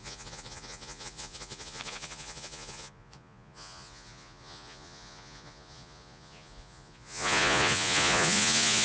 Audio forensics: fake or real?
fake